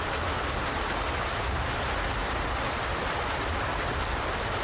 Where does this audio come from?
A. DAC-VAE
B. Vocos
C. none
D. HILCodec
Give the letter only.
C